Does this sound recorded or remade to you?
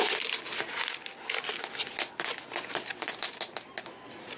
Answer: recorded